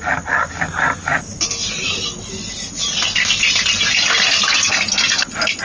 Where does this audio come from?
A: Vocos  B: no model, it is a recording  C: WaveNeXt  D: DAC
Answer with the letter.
B